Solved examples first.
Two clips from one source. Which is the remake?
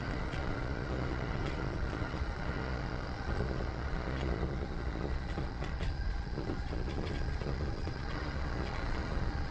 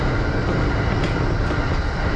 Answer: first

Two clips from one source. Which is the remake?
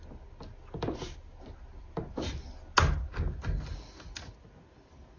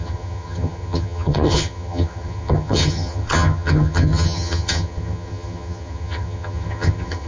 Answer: second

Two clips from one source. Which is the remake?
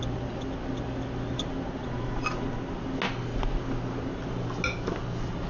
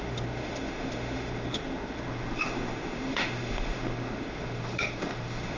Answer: second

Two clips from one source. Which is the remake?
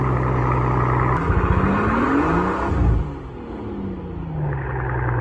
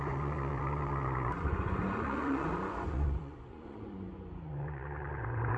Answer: second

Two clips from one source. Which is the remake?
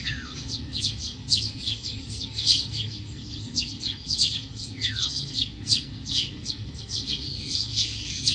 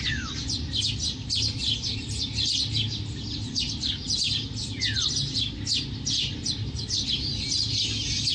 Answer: first